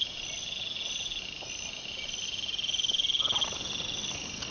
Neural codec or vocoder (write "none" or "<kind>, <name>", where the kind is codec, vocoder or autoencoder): none